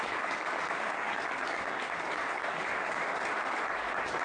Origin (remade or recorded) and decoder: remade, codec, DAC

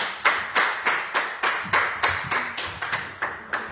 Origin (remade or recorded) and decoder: recorded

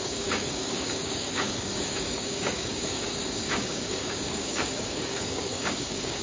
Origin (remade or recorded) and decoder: remade, codec, DAC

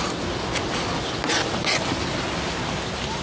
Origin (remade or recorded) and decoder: recorded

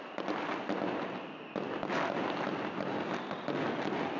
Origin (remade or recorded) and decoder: recorded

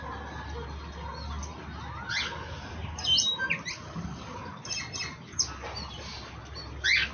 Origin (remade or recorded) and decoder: recorded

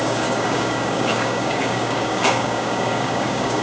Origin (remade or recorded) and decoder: remade, codec, DAC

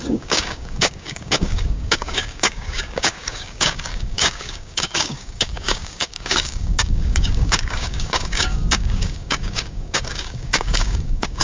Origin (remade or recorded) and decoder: remade, codec, DAC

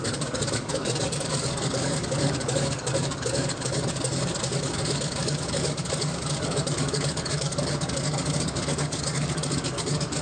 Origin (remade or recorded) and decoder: remade, codec, DAC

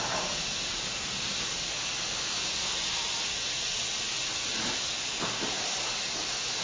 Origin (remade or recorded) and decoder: recorded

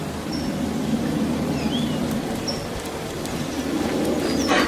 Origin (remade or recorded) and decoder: recorded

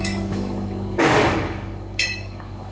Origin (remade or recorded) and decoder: remade, codec, DAC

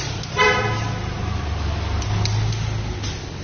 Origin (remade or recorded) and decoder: recorded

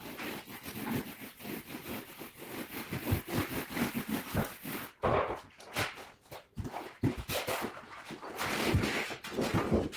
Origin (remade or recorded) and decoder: recorded